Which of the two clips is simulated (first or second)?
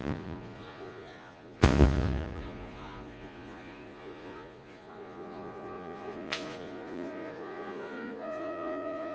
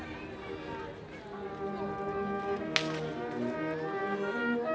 first